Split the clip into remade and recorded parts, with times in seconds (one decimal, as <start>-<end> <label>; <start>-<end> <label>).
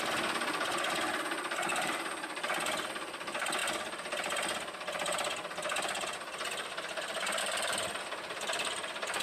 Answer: 0.0-1.7 recorded; 1.7-2.5 remade; 2.5-9.2 recorded